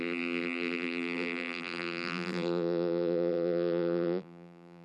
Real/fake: fake